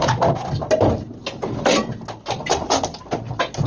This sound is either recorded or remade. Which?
recorded